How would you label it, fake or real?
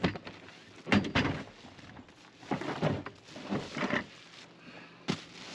real